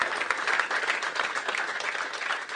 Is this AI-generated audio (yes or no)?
no